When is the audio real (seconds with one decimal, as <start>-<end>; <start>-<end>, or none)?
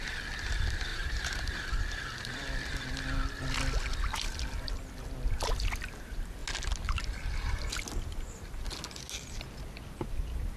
0.0-0.9; 1.6-10.6